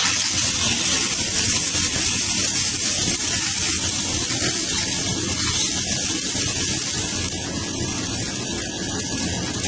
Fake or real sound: real